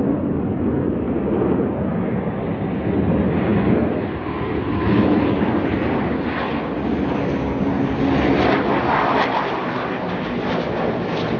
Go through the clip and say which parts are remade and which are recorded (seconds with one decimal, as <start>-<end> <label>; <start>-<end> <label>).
0.0-11.4 recorded